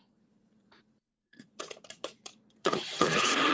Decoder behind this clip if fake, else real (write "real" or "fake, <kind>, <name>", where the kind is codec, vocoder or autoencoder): fake, vocoder, Vocos